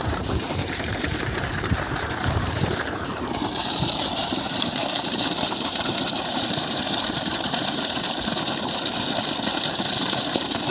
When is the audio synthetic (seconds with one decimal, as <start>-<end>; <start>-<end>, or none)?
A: 0.0-8.3; 9.7-10.7